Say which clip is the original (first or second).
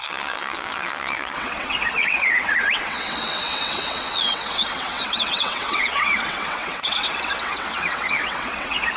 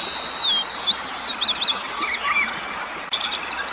second